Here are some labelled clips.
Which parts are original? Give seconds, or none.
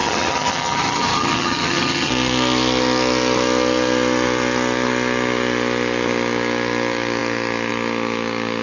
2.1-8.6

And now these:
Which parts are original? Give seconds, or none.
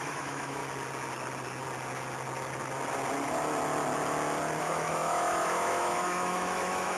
0.6-4.6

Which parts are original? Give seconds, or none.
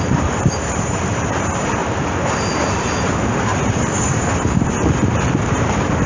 none